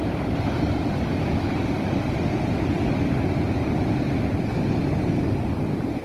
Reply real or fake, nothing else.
real